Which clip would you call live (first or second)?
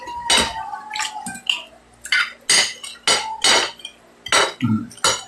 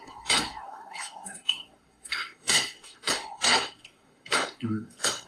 first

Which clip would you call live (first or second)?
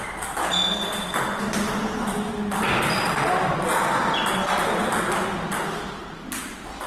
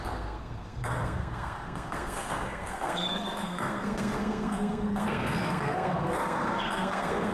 first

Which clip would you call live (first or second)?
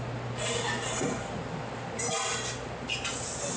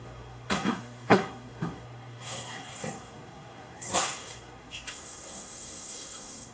first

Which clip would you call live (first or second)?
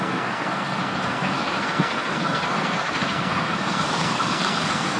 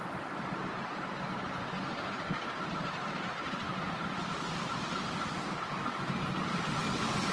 second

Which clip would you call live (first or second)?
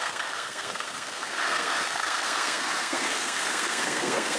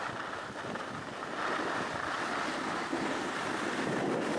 second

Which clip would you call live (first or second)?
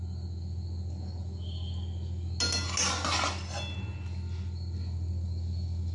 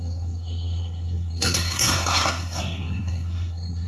first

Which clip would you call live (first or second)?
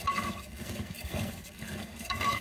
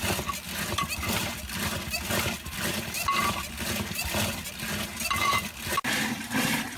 second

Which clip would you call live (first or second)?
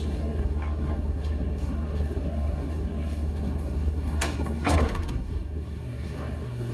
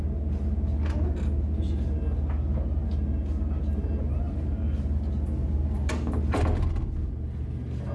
second